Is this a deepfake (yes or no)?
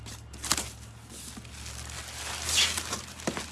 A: no